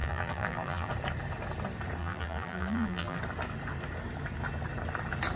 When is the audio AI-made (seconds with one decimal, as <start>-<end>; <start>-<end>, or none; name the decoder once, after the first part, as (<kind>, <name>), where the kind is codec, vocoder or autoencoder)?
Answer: 0.0-0.9 (vocoder, BigVGAN v2); 2.0-3.2